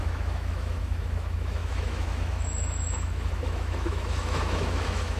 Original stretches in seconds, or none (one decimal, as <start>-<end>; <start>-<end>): none